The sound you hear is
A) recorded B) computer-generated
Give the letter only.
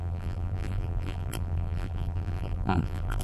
B